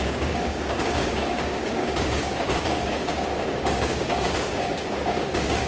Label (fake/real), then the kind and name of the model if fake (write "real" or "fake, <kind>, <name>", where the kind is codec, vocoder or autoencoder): fake, codec, DAC